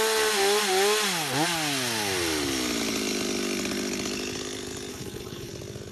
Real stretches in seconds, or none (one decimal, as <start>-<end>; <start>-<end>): 0.0-4.9; 5.5-5.9